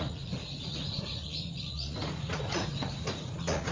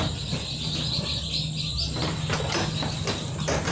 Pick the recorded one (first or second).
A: second